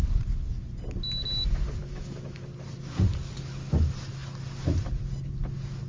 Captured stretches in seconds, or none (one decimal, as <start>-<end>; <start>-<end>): 0.0-1.8; 2.4-5.9